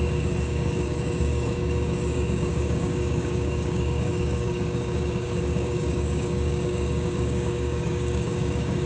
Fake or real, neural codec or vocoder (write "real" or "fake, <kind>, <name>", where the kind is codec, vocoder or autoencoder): fake, codec, DAC